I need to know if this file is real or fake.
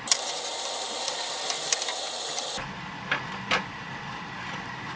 real